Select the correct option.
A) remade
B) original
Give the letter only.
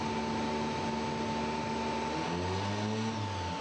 B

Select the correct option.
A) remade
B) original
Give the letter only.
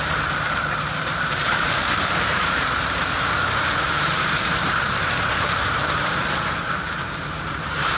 A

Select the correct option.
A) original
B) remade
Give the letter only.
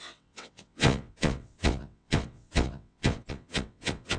B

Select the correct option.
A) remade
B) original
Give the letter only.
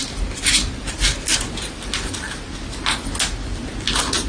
B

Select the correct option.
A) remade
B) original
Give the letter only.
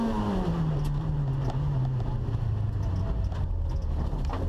B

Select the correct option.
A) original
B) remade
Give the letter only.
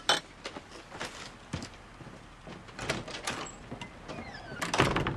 A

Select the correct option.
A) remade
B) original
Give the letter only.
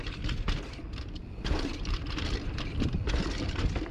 A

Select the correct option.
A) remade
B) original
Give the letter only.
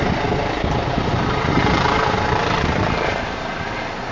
B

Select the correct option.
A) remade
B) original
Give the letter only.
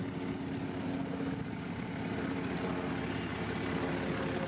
B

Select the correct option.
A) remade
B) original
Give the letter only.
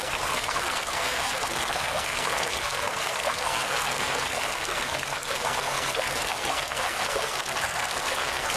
A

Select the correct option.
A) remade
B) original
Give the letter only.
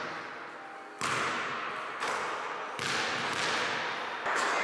B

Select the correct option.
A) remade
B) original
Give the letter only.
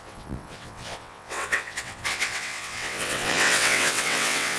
A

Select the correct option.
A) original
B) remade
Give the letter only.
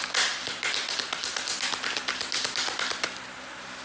A